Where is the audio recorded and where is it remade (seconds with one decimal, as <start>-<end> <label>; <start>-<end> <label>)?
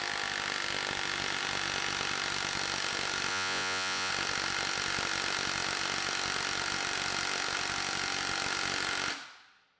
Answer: 0.0-3.3 recorded; 3.3-4.1 remade; 4.1-9.8 recorded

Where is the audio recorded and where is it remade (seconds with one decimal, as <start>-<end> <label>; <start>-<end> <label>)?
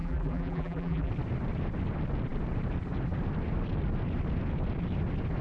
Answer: 0.0-1.1 remade; 1.1-5.4 recorded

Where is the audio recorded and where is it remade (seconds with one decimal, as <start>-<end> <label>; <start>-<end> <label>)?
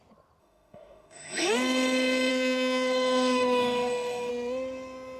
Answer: 0.0-0.4 recorded; 0.4-1.5 remade; 1.5-2.3 recorded; 2.3-4.3 remade; 4.3-5.2 recorded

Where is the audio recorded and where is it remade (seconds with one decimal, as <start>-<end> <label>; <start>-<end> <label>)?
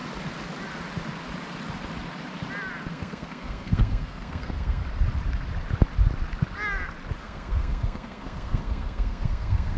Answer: 0.0-2.9 recorded; 2.9-4.8 remade; 4.8-7.2 recorded; 7.2-9.8 remade